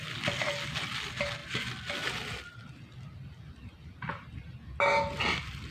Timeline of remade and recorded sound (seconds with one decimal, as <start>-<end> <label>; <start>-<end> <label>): 0.0-5.7 recorded